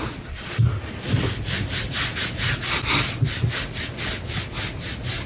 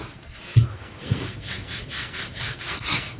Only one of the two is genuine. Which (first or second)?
first